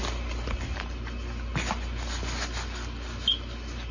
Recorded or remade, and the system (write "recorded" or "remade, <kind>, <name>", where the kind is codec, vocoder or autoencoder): recorded